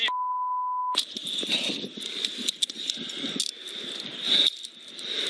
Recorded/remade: recorded